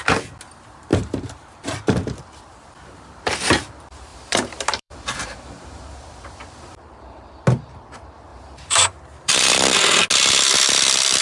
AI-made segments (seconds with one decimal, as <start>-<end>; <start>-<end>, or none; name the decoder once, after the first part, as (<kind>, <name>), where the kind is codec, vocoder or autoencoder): 0.9-3.3 (vocoder, BigVGAN v2); 4.1-7.4; 8.3-9.5